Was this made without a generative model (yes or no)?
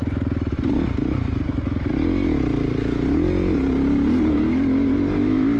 yes